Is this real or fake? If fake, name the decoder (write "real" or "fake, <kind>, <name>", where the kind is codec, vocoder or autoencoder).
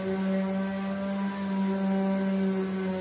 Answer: real